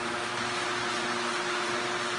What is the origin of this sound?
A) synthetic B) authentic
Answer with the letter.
B